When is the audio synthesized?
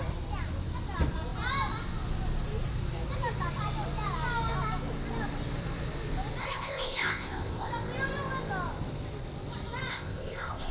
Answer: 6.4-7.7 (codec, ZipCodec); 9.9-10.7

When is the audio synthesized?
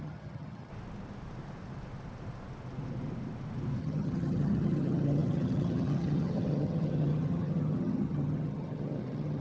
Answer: 0.0-0.7 (vocoder, HiFi-GAN); 3.8-9.4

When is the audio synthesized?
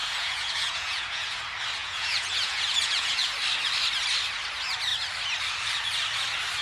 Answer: 0.0-1.4 (vocoder, Vocos); 1.8-3.3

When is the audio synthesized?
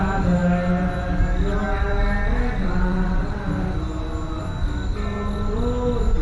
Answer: 2.6-3.4 (vocoder, WaveNeXt)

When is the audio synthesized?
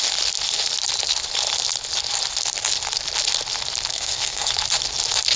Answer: 3.9-4.5 (codec, SNAC)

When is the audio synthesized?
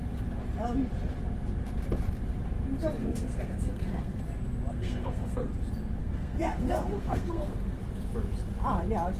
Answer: 3.0-4.2 (codec, SNAC); 4.7-5.5; 6.0-7.8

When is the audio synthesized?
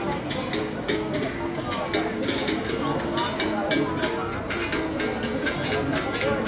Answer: 0.6-1.6 (codec, DAC); 2.1-2.7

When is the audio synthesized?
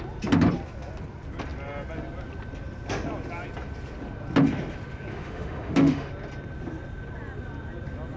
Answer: 5.1-6.1 (autoencoder, DAC-VAE)